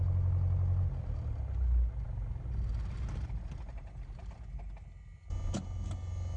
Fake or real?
real